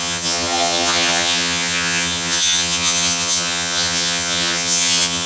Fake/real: fake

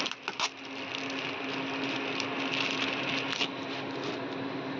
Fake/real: real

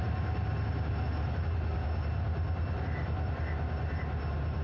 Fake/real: real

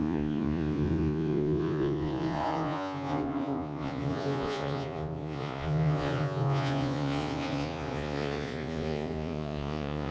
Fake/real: fake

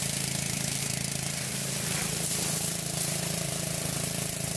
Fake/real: fake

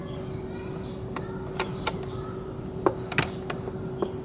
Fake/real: real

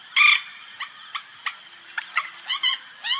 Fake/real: real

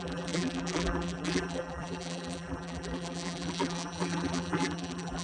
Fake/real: fake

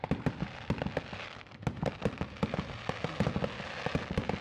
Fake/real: real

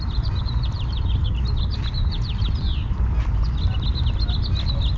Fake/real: real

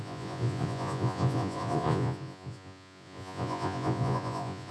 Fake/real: fake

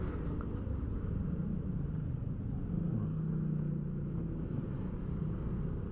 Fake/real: real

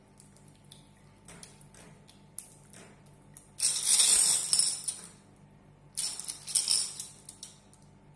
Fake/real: real